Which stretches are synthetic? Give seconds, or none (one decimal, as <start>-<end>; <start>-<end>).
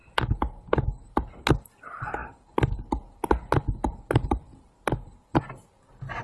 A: none